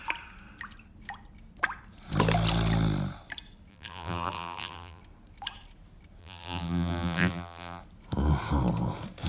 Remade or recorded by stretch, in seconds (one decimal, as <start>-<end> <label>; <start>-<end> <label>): 0.0-3.7 recorded; 3.7-5.0 remade; 5.0-6.2 recorded; 6.2-7.8 remade; 7.8-9.3 recorded